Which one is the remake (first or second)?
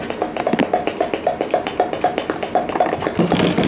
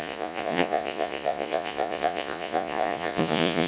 second